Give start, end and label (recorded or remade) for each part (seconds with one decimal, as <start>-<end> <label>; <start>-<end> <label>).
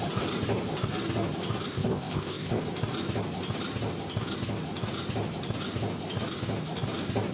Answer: 0.0-1.7 recorded; 1.7-2.6 remade; 2.6-7.3 recorded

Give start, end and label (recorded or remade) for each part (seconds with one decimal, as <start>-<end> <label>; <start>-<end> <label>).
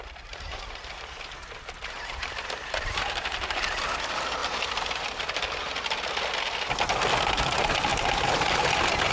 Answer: 0.0-3.8 remade; 3.8-4.4 recorded; 4.4-5.7 remade; 5.7-7.9 recorded; 7.9-8.6 remade; 8.6-9.1 recorded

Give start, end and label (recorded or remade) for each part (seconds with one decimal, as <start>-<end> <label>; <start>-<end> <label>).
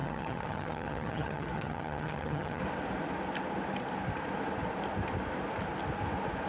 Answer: 0.0-2.6 remade; 2.6-6.5 recorded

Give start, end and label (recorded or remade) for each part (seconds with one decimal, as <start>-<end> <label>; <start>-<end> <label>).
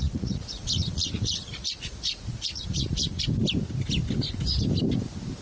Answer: 0.0-3.2 remade; 3.2-5.4 recorded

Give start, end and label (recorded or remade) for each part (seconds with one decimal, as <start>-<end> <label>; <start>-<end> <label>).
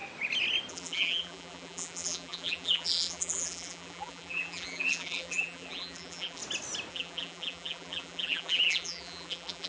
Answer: 0.0-0.7 recorded; 0.7-6.4 remade; 6.4-6.9 recorded; 6.9-9.7 remade